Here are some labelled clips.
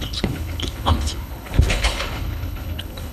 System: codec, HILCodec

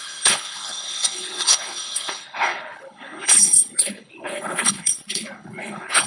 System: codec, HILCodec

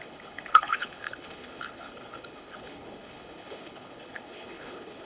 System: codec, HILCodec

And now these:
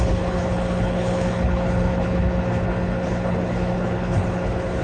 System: codec, HILCodec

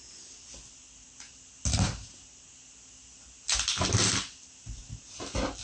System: none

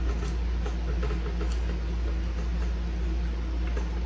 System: none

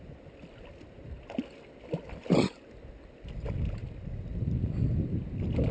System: none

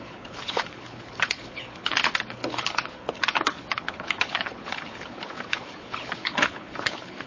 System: codec, HILCodec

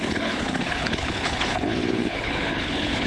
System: codec, HILCodec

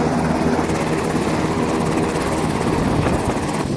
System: none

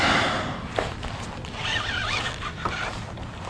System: none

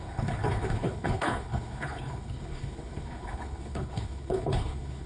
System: codec, HILCodec